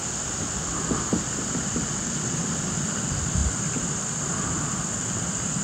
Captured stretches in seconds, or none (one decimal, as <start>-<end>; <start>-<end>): 0.0-2.4